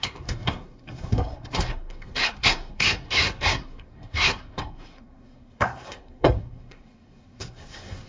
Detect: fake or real fake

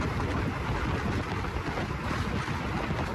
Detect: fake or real real